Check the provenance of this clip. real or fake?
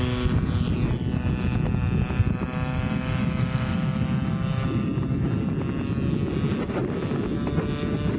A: real